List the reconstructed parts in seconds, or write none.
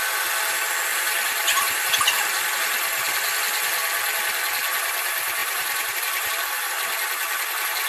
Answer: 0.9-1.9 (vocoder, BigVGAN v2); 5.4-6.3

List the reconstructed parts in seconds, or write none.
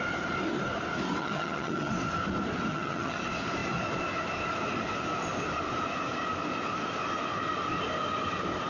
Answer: 1.2-1.9 (vocoder, HiFi-GAN); 2.7-3.2